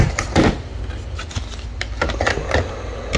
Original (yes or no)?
yes